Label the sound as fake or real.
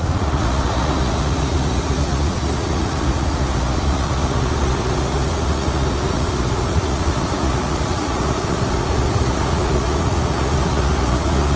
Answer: fake